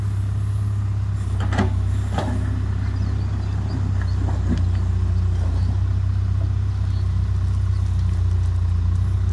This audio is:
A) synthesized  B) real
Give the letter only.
B